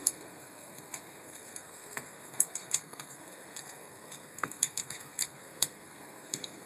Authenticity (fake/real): fake